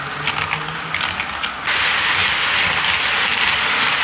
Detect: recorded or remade recorded